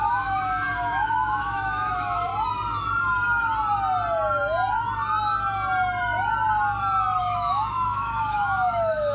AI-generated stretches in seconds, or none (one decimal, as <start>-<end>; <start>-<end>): 0.0-2.3; 7.2-9.1